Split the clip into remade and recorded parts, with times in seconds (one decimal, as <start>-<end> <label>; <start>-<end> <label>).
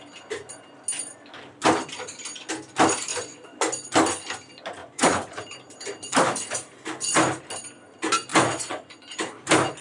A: 0.0-3.1 recorded; 3.1-3.6 remade; 3.6-4.8 recorded; 4.8-5.4 remade; 5.4-8.3 recorded; 8.3-9.1 remade; 9.1-9.8 recorded